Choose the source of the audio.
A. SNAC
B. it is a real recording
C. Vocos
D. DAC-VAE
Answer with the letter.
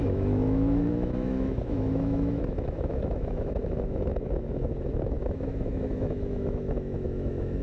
D